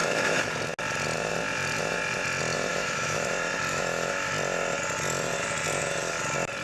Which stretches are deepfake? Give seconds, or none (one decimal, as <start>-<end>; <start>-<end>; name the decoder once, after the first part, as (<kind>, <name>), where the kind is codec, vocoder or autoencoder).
0.0-0.5 (autoencoder, DAC-VAE); 2.7-3.3; 3.7-4.3